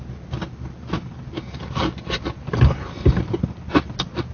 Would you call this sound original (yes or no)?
yes